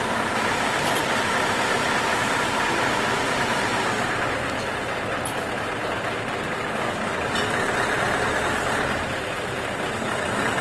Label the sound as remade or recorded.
remade